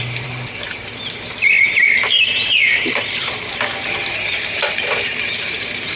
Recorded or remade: remade